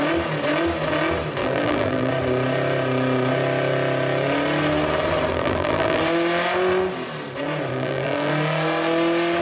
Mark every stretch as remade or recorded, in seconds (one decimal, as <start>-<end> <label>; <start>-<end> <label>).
0.0-1.4 recorded; 1.4-2.1 remade; 2.1-5.3 recorded; 5.3-6.0 remade; 6.0-7.7 recorded; 7.7-8.3 remade; 8.3-9.4 recorded